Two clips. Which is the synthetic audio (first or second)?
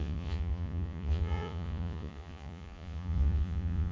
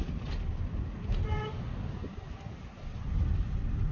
first